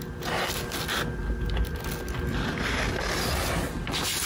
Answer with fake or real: real